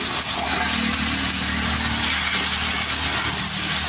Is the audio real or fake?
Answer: real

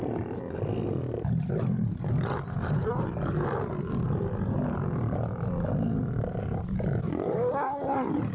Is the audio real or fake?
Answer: real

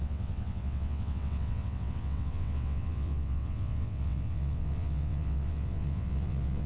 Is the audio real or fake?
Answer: fake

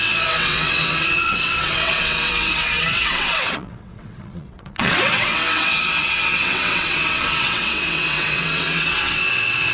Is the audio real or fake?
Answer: fake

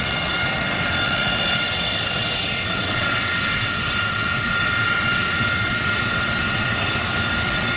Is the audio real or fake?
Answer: fake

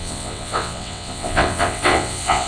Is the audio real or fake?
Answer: fake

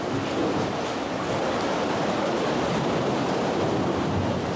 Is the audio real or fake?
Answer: real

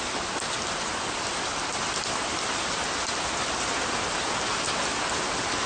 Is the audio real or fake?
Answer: real